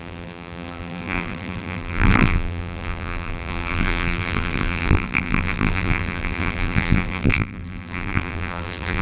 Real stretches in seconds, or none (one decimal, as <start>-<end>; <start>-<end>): none